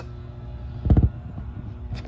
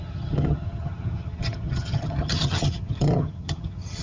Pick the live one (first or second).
first